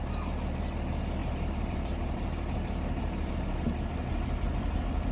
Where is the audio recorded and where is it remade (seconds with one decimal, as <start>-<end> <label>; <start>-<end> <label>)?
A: 0.0-1.2 recorded; 1.2-3.3 remade; 3.3-5.1 recorded